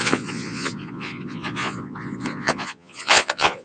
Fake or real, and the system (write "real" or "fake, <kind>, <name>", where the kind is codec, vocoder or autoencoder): fake, vocoder, Vocos